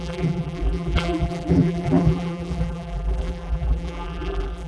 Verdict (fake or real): fake